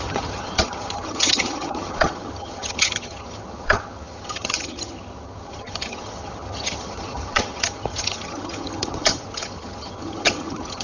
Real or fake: fake